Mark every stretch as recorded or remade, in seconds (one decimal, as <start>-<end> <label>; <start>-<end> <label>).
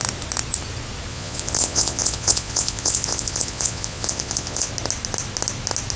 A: 0.0-1.1 recorded; 1.1-4.7 remade; 4.7-6.0 recorded